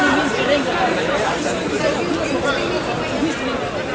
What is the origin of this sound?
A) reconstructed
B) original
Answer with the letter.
B